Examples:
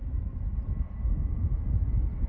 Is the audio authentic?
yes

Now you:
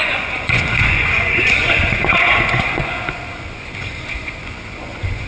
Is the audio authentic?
no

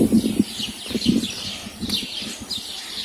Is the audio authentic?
yes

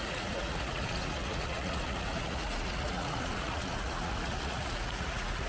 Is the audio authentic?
no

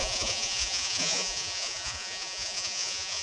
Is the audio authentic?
no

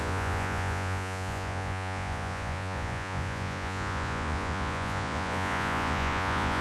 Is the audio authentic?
no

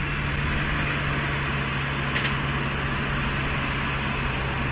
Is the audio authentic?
yes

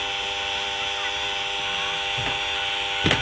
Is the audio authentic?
yes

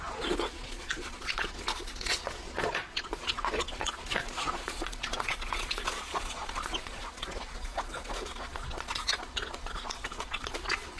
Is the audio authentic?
no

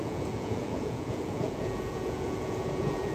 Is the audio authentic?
no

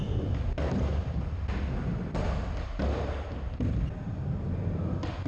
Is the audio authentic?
yes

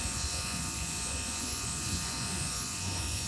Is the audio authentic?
no